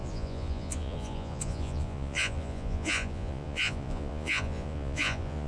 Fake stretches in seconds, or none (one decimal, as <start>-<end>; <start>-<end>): 0.0-5.5